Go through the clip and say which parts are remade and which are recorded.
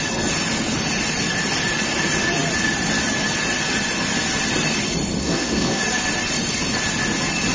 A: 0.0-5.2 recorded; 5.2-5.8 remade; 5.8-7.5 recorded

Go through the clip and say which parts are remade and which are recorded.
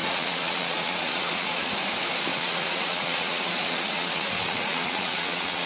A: 0.0-1.7 remade; 1.7-2.3 recorded; 2.3-5.7 remade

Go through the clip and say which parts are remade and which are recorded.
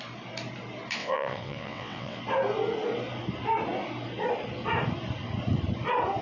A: 0.0-1.0 recorded; 1.0-2.2 remade; 2.2-6.2 recorded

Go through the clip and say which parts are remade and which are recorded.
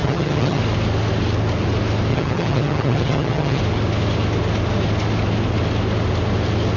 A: 0.0-0.6 remade; 0.6-2.1 recorded; 2.1-3.6 remade; 3.6-6.8 recorded